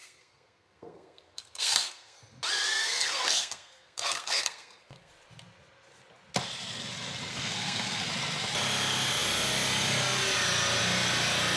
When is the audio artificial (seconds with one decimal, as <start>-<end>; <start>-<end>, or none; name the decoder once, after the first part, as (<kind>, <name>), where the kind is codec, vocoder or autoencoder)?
0.0-2.2 (codec, SNAC); 2.8-5.1; 7.3-8.1